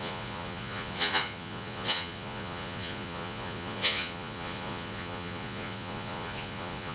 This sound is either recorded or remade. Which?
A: remade